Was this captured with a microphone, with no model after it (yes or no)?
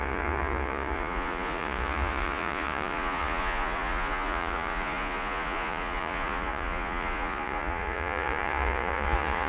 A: no